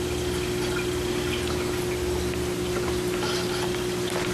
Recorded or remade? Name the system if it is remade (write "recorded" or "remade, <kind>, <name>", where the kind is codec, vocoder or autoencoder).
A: recorded